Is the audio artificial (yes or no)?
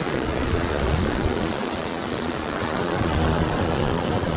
yes